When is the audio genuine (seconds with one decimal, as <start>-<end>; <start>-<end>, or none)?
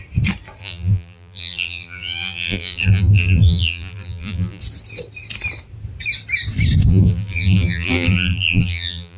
0.0-0.6; 4.6-6.9